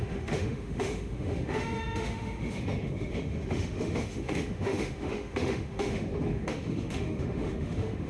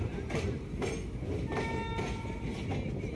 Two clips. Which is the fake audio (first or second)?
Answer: first